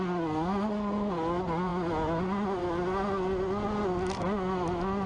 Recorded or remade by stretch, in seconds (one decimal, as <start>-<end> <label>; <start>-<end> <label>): 0.0-5.1 recorded